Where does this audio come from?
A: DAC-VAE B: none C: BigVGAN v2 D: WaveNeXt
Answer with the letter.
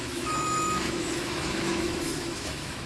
A